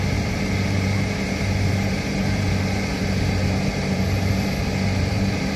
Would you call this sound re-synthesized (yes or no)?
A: yes